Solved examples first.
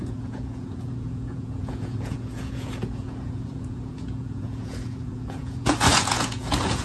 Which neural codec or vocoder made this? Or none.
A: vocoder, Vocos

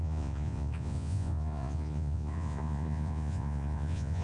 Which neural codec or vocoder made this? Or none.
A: vocoder, Vocos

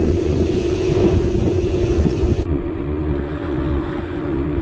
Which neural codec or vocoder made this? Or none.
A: vocoder, Vocos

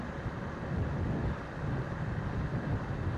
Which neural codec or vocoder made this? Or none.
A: none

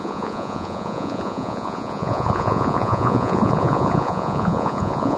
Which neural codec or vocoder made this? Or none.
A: vocoder, Vocos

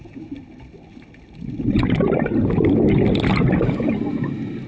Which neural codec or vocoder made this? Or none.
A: none